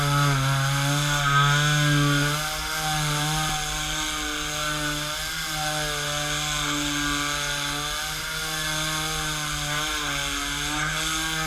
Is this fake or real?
real